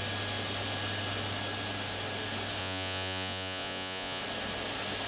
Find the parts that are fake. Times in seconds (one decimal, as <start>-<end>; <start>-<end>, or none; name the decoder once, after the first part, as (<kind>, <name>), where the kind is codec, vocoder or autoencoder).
2.6-4.2 (vocoder, Vocos)